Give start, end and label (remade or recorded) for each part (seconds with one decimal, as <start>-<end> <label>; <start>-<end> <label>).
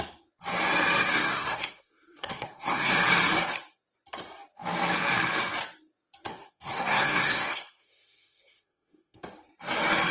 0.0-1.1 recorded; 1.1-2.9 remade; 2.9-6.3 recorded; 6.3-9.2 remade; 9.2-10.1 recorded